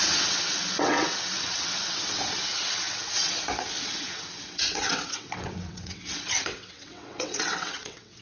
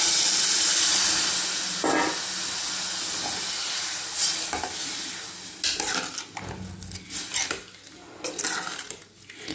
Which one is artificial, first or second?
first